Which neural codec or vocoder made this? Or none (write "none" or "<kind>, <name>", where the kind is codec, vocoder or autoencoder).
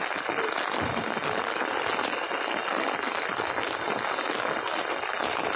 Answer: none